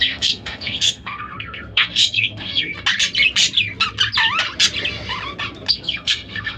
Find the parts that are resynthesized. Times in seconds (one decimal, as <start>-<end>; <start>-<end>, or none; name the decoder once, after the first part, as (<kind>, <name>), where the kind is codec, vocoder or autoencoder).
0.0-2.7 (codec, SNAC); 5.7-6.6